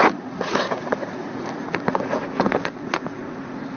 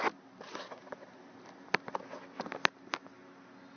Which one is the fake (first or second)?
first